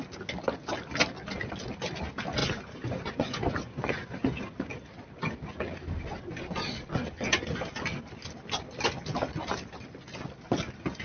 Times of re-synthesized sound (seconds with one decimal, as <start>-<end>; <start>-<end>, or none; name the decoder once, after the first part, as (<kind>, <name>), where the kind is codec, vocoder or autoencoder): 2.4-4.3 (vocoder, Vocos)